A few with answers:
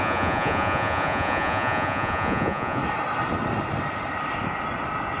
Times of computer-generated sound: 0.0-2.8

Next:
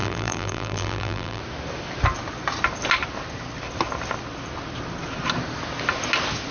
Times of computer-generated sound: 0.0-1.4